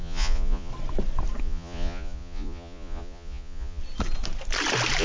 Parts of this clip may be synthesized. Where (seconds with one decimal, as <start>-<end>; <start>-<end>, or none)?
0.0-0.7; 1.4-3.8